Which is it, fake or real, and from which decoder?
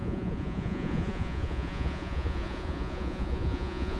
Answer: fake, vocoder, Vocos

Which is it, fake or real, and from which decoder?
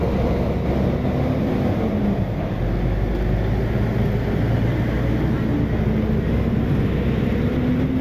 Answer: real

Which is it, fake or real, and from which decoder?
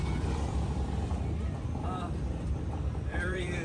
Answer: fake, vocoder, BigVGAN v2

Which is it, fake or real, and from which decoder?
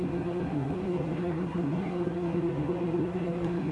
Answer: fake, codec, SNAC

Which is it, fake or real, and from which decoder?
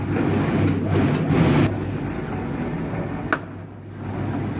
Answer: real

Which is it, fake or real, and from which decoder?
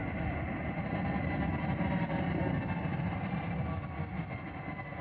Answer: real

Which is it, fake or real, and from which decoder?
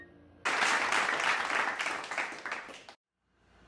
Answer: real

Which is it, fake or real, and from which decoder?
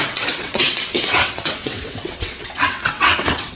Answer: fake, vocoder, WaveNeXt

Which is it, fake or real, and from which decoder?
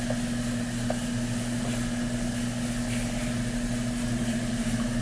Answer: real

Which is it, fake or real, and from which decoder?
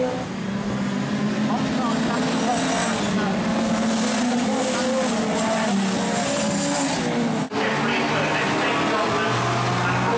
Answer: real